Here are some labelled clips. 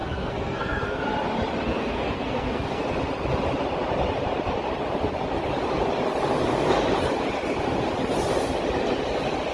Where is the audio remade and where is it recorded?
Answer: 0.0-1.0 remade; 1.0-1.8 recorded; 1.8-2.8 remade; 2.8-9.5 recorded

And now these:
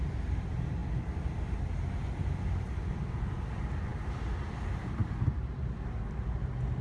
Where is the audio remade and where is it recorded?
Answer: 0.0-6.8 recorded

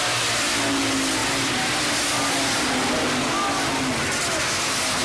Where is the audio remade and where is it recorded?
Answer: 0.0-5.0 recorded